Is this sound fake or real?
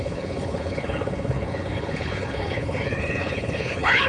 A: fake